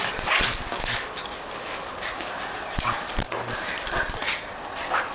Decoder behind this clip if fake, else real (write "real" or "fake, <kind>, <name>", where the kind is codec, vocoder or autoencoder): real